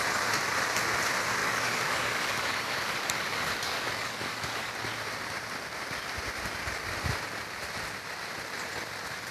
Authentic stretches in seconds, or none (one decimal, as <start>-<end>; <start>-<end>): 0.0-1.4; 4.7-9.3